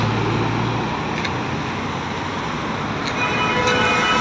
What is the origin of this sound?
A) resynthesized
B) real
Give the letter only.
B